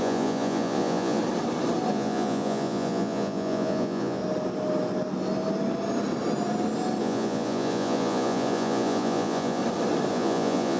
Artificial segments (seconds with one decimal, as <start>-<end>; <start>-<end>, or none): 0.0-1.2; 1.9-4.2; 7.0-9.6; 10.1-10.8

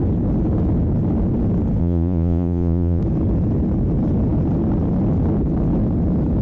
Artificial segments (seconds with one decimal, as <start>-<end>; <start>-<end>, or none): 1.8-3.0

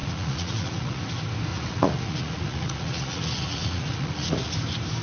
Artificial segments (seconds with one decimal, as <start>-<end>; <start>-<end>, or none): 0.0-1.0; 1.5-4.5

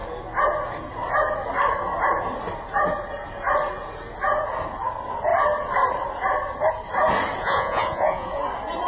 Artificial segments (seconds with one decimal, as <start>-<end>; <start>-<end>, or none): 7.4-8.4

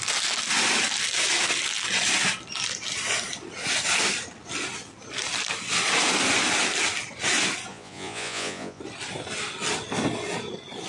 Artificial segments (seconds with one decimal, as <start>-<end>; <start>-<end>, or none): 7.7-8.8

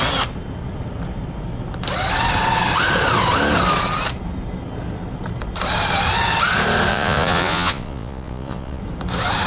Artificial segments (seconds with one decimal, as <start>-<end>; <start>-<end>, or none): 6.9-8.8

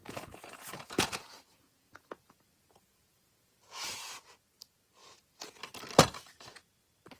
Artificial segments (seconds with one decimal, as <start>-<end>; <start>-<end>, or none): 0.0-4.1; 5.0-5.6

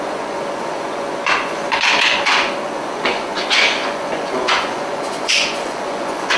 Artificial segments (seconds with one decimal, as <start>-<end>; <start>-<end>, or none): 0.0-6.4